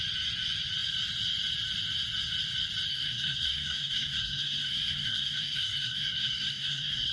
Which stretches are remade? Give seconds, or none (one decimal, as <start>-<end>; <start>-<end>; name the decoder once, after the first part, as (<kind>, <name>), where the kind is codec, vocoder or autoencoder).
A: 2.9-7.1 (codec, SNAC)